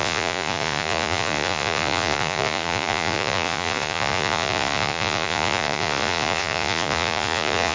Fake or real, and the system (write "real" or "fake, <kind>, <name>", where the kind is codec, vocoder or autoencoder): fake, vocoder, Vocos